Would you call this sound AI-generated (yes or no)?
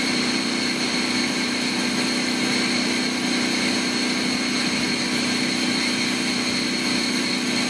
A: no